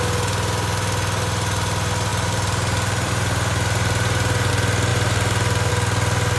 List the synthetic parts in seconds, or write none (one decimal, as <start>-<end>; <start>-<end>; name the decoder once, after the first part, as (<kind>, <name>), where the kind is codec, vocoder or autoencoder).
2.1-4.5 (vocoder, BigVGAN v2); 4.9-5.7